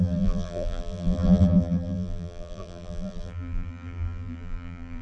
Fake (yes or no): yes